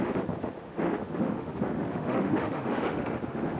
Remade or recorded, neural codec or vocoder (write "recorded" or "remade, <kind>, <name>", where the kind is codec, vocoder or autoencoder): remade, autoencoder, DAC-VAE